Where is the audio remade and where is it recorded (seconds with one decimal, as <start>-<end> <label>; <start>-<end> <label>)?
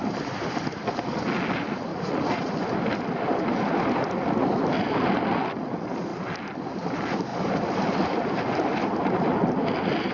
0.0-1.9 recorded; 1.9-2.5 remade; 2.5-10.1 recorded